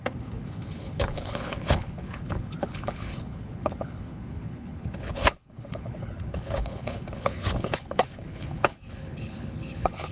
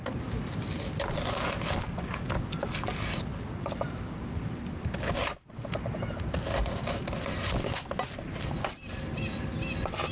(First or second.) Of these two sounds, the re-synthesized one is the first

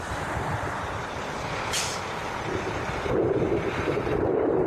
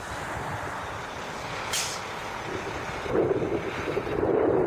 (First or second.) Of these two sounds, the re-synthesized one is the first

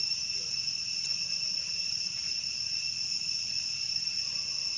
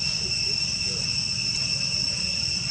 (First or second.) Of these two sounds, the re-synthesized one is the first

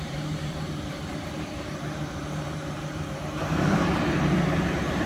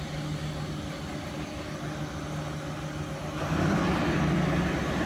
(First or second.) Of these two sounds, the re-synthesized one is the first